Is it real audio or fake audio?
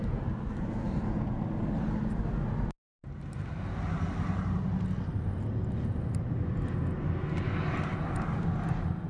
real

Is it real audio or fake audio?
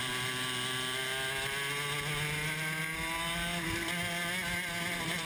real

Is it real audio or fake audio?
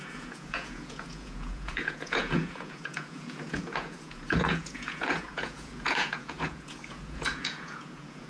fake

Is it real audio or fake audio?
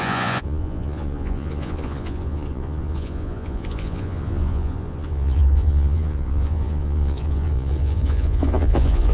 fake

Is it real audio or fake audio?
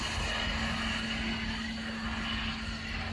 real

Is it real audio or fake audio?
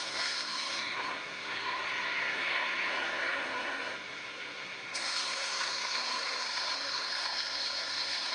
fake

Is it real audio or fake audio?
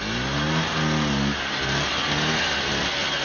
real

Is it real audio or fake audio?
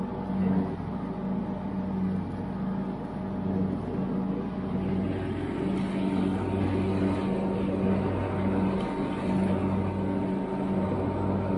real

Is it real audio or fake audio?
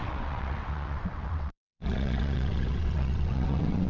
fake